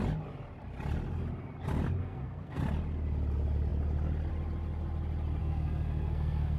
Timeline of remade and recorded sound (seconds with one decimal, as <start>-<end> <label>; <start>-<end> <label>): 0.0-2.0 recorded; 2.0-2.6 remade; 2.6-5.4 recorded; 5.4-6.6 remade

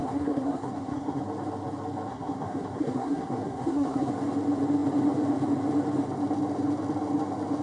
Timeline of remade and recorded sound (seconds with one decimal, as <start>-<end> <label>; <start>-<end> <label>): 0.0-1.2 remade; 1.2-2.1 recorded; 2.1-4.1 remade; 4.1-7.6 recorded